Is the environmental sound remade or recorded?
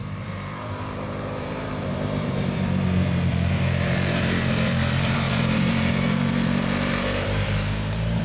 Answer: remade